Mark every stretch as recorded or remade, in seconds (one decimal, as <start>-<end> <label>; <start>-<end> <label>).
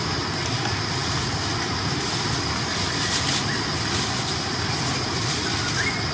0.0-6.1 recorded